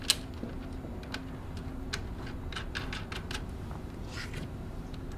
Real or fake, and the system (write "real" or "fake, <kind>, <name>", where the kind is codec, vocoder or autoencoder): real